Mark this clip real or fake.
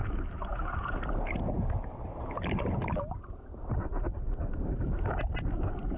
real